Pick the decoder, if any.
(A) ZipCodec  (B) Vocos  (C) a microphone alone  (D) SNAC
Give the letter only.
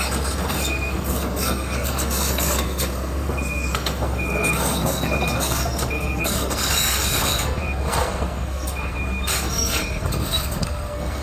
D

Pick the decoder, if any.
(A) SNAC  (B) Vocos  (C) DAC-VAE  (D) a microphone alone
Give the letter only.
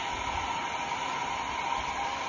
D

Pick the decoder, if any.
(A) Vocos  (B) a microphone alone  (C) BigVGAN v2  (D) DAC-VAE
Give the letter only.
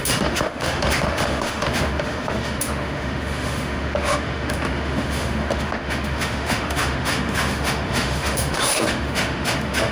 D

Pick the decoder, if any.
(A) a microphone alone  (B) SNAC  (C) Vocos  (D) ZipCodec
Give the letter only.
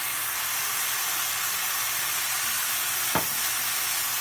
A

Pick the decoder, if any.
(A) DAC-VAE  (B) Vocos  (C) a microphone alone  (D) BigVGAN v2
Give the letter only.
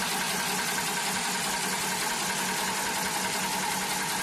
C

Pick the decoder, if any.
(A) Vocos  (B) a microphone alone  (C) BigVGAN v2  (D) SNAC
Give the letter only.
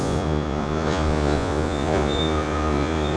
A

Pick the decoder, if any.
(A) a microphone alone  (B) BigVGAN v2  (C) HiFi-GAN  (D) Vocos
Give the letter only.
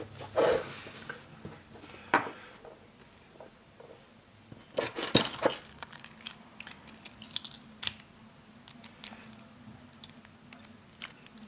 A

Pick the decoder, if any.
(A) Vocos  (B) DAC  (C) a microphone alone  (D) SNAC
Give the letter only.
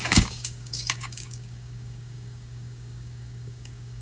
B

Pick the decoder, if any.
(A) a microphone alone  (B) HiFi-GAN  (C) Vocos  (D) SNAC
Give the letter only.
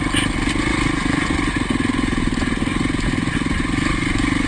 A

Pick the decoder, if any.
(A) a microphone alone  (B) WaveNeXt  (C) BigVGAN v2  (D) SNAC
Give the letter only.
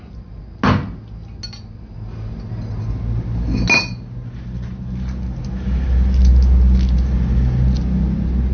A